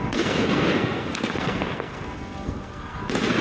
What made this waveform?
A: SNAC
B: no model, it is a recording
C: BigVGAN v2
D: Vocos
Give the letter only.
A